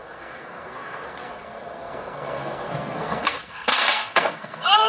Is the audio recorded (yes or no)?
no